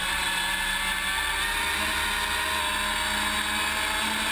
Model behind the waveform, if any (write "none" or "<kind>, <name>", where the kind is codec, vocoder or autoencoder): none